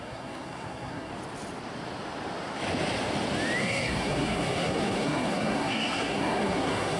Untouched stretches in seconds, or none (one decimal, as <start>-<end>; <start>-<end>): 1.1-3.6